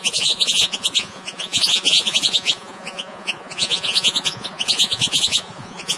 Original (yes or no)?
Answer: no